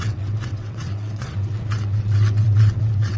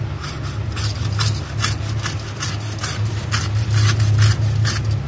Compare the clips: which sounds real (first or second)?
second